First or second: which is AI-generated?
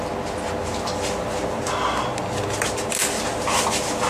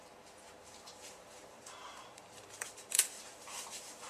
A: second